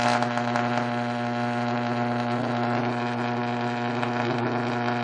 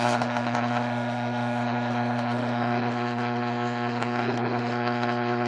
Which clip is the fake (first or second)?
second